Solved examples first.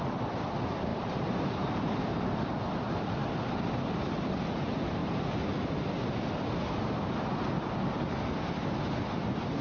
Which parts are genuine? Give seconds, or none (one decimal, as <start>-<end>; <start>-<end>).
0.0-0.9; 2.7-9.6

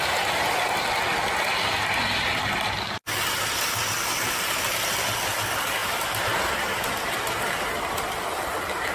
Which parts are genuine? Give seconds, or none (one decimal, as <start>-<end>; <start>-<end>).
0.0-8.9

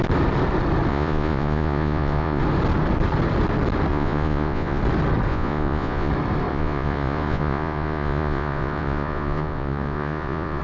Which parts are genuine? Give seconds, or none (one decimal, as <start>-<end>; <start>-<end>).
0.0-0.9; 2.4-3.9; 4.8-5.3; 6.1-6.5

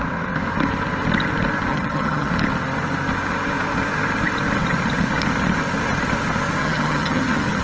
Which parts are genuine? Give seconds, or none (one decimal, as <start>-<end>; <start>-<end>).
0.0-1.7; 2.3-6.6